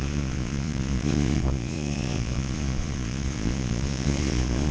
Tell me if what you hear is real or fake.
fake